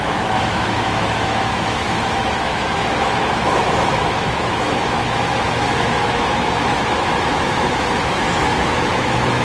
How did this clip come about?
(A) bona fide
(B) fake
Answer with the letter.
B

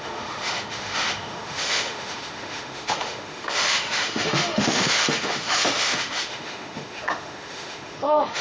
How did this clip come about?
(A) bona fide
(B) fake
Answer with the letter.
B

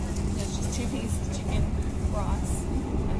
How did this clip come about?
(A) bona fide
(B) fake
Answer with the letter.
A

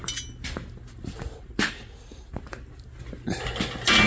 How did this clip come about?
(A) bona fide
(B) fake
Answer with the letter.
A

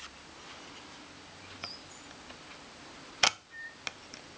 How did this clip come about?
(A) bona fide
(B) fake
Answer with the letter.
A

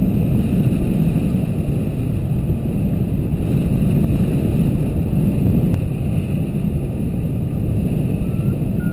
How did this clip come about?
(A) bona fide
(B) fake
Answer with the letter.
A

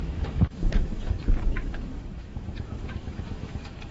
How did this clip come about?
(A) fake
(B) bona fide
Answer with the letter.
A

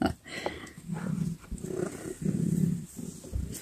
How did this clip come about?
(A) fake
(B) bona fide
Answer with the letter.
B